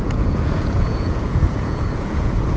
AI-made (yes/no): yes